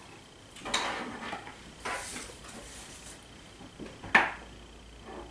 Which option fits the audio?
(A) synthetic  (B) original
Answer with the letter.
B